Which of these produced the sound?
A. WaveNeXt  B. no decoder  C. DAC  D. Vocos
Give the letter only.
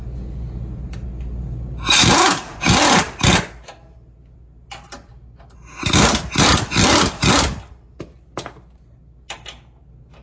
B